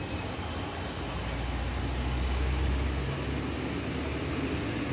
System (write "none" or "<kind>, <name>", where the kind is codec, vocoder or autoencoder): none